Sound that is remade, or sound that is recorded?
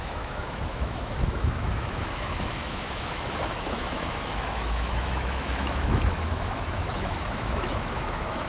remade